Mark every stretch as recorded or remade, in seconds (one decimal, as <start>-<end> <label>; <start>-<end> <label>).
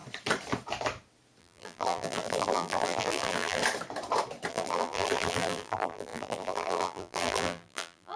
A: 0.0-1.4 recorded; 1.4-3.6 remade; 3.6-4.5 recorded; 4.5-8.2 remade